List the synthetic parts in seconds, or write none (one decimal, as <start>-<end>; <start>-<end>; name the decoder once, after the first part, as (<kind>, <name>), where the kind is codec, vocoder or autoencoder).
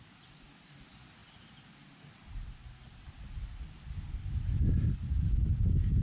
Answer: none